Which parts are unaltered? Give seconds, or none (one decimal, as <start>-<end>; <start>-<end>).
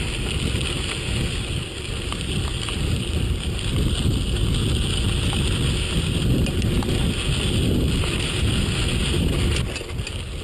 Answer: 0.0-10.4